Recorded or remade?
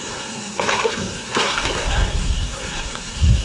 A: remade